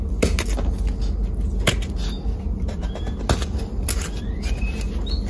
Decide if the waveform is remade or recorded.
recorded